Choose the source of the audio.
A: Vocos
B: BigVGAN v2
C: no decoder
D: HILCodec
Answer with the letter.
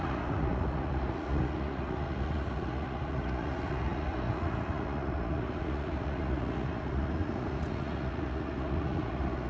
A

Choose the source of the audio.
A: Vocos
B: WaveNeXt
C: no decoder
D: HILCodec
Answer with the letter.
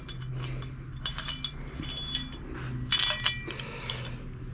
C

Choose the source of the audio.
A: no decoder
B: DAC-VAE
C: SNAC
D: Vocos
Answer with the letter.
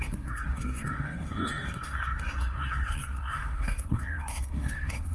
C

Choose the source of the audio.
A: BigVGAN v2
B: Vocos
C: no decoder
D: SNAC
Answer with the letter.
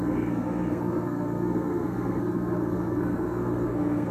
D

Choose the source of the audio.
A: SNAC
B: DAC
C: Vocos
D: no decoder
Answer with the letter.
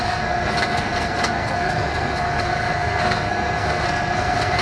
A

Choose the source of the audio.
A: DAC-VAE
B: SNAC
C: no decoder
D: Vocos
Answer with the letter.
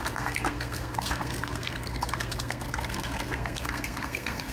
B